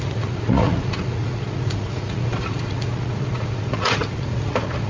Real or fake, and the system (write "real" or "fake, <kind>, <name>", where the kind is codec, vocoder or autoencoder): fake, vocoder, Vocos